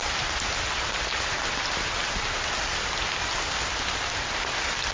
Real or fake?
real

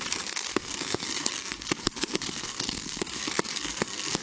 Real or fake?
fake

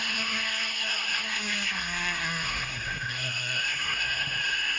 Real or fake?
fake